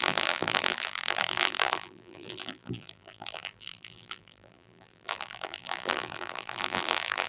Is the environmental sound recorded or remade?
remade